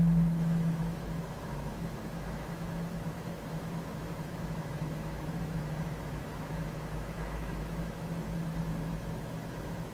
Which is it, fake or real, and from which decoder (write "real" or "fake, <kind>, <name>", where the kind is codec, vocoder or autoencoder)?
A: fake, autoencoder, DAC-VAE